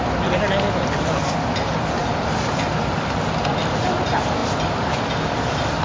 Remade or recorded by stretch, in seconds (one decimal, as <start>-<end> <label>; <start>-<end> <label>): 0.0-5.8 recorded